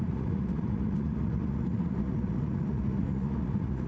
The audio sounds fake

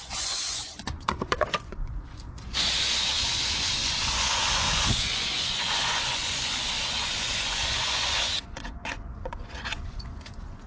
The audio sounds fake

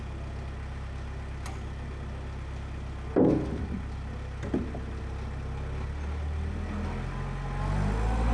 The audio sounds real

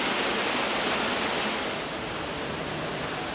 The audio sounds real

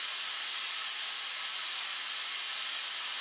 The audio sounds real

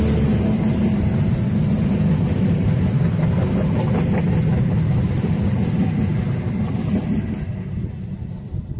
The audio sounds real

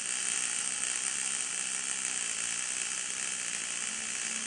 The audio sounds real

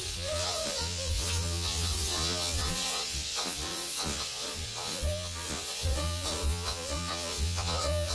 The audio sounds fake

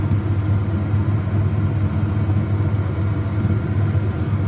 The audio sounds real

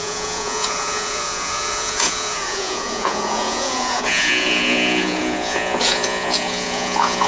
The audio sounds fake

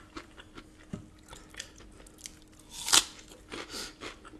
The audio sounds real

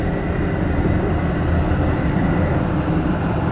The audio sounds real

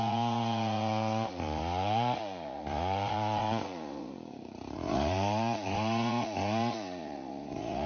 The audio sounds fake